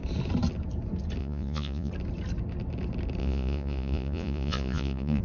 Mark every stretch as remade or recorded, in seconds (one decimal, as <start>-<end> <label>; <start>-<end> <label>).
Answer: 0.0-1.2 recorded; 1.2-1.9 remade; 1.9-3.2 recorded; 3.2-5.2 remade

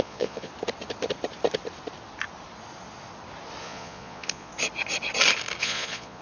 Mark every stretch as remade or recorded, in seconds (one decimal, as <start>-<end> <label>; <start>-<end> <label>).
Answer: 0.0-0.5 remade; 0.5-3.6 recorded; 3.6-4.5 remade; 4.5-5.6 recorded; 5.6-6.2 remade

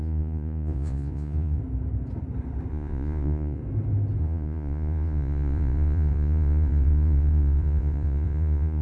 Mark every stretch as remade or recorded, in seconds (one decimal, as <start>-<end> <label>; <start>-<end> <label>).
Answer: 0.0-1.6 remade; 1.6-2.7 recorded; 2.7-3.6 remade; 3.6-4.2 recorded; 4.2-8.8 remade

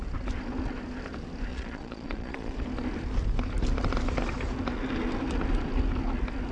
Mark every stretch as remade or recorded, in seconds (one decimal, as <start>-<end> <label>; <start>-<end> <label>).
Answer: 0.0-1.5 recorded; 1.5-2.5 remade; 2.5-6.5 recorded